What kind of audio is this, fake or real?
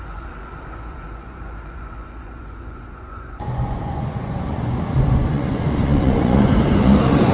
fake